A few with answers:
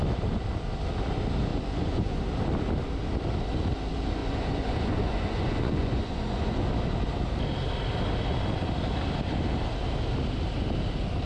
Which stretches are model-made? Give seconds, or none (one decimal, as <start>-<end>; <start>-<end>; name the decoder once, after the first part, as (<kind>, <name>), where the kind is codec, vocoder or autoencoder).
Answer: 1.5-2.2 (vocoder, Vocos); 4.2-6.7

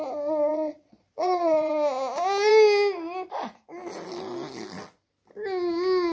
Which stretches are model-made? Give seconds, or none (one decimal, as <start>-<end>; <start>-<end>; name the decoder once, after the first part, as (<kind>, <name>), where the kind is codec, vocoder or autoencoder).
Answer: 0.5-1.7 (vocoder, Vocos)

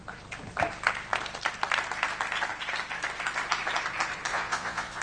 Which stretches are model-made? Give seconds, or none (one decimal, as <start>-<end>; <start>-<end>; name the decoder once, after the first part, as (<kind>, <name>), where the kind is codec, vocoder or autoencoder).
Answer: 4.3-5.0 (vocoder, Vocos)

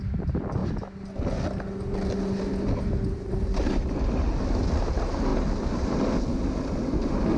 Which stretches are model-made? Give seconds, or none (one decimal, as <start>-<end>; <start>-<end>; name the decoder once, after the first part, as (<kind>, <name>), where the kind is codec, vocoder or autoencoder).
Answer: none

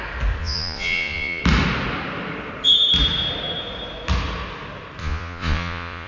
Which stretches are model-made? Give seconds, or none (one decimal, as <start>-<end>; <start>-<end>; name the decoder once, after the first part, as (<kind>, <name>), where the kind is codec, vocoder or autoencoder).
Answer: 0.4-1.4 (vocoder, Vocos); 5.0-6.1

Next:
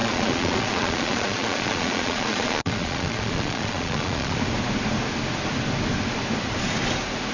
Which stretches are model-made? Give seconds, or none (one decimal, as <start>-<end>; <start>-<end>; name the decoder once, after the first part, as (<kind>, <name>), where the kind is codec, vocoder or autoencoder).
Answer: 0.0-4.4 (vocoder, Vocos)

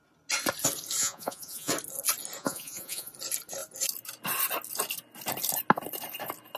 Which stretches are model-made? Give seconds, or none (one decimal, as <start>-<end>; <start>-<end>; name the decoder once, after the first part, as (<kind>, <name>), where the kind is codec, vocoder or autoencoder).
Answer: 1.0-1.7 (vocoder, Vocos); 2.4-3.1

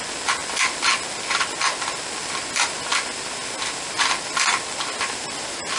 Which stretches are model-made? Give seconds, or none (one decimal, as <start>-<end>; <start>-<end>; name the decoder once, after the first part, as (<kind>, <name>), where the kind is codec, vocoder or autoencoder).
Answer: none